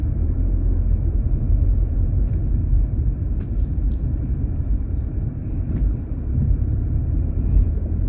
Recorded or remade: remade